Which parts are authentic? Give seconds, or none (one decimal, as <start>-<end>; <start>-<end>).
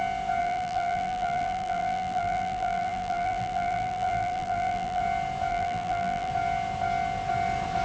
0.0-0.4; 5.0-5.5; 6.3-7.8